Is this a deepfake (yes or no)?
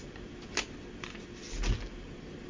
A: no